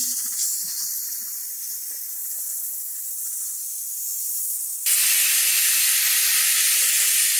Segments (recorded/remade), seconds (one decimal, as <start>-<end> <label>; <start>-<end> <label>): 0.0-7.4 recorded